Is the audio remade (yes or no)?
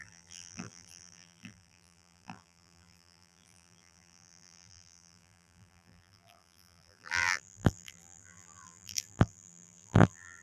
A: yes